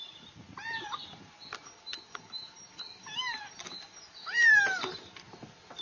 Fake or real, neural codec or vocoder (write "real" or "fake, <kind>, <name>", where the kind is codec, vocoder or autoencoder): real